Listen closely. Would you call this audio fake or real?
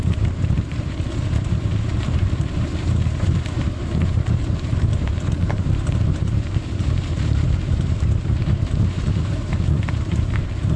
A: fake